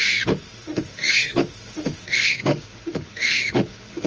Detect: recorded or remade remade